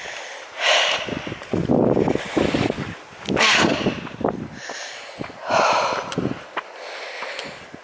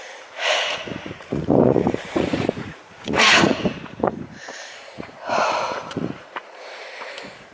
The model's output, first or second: second